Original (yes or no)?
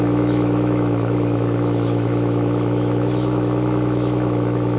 no